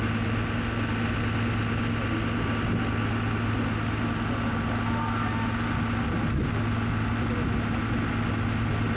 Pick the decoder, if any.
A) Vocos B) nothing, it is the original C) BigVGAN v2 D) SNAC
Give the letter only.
B